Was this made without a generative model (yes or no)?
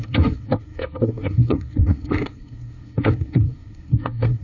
no